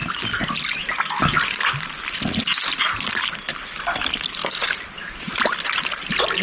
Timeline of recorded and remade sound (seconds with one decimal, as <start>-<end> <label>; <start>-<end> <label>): 0.0-6.4 recorded